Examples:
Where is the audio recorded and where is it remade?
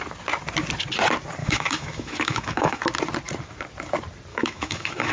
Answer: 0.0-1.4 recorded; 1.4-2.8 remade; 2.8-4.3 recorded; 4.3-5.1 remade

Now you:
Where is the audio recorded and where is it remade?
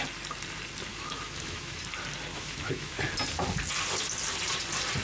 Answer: 0.0-0.9 recorded; 0.9-1.8 remade; 1.8-2.3 recorded; 2.3-3.0 remade; 3.0-5.0 recorded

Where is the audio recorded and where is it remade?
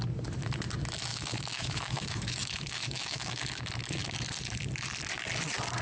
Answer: 0.0-1.1 recorded; 1.1-3.6 remade; 3.6-5.8 recorded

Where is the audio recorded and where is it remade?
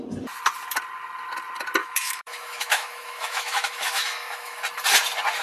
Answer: 0.0-1.8 recorded; 1.8-4.6 remade; 4.6-5.4 recorded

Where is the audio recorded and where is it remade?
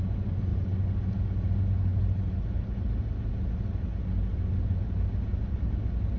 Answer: 0.0-6.2 recorded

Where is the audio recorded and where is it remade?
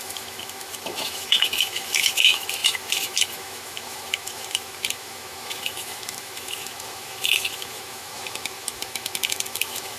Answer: 0.0-10.0 remade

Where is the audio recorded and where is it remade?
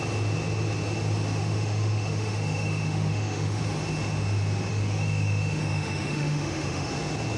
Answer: 0.0-1.4 recorded; 1.4-3.6 remade; 3.6-4.7 recorded; 4.7-6.9 remade; 6.9-7.4 recorded